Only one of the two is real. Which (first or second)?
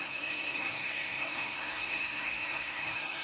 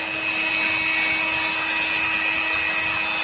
second